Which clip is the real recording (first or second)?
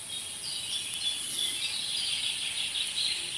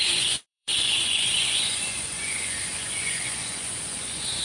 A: first